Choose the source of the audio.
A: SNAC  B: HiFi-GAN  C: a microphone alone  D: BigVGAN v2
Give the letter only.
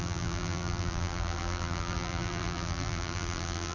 D